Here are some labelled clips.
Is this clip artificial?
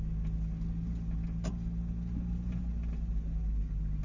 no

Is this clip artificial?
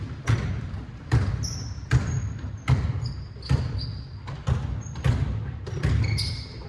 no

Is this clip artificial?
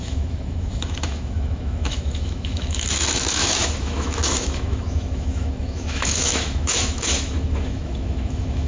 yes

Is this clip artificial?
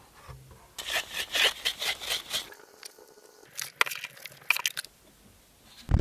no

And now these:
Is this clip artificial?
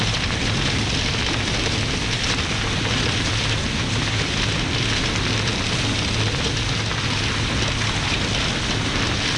no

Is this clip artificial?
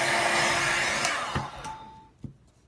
no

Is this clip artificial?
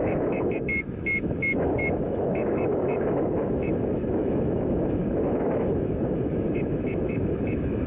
yes